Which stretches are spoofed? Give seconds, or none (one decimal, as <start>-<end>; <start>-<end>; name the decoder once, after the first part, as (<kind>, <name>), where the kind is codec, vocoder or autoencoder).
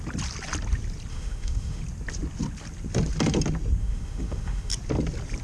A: 1.1-1.8 (autoencoder, DAC-VAE); 3.8-4.7